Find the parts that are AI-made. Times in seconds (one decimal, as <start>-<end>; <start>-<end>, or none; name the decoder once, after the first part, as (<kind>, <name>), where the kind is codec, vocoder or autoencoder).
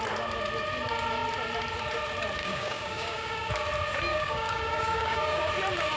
2.4-3.5 (codec, DAC); 4.1-5.5